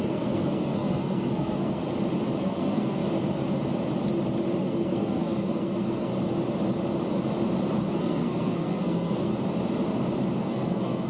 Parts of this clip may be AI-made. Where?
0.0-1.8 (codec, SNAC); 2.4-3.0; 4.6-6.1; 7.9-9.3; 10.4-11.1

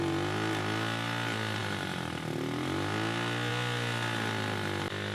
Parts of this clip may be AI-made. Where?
none

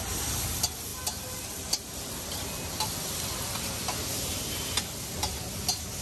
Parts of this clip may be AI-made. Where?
none

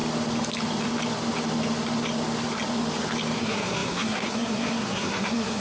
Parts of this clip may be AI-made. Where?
3.4-5.6 (codec, SNAC)

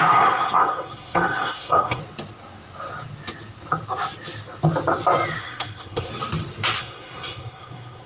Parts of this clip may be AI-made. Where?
0.0-2.0 (codec, SNAC); 5.4-6.1; 6.8-8.1

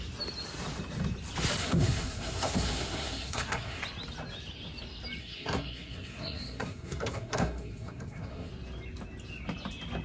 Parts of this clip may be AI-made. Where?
1.6-3.8 (codec, SNAC); 5.2-8.5

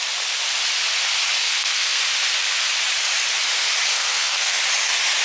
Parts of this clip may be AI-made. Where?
1.4-2.0 (codec, SNAC); 3.9-4.6

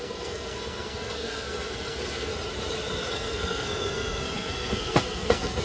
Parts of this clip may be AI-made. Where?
0.0-2.3 (codec, SNAC); 3.1-5.6